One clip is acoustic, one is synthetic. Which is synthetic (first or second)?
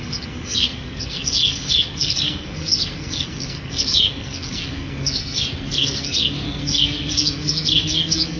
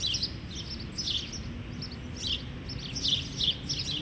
first